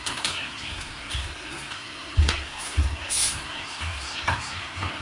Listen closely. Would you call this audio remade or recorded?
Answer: remade